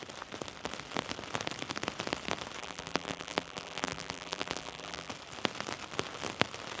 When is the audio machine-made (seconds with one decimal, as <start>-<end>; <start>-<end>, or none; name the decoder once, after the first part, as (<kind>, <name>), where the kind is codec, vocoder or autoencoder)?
2.6-5.1 (vocoder, BigVGAN v2)